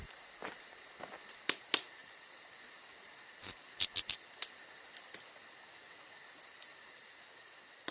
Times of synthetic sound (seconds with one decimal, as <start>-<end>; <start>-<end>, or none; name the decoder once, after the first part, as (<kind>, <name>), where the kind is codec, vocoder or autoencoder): 0.4-1.1 (vocoder, BigVGAN v2); 2.0-2.5; 2.9-4.2; 6.7-7.2